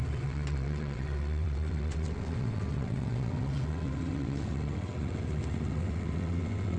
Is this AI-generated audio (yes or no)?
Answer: yes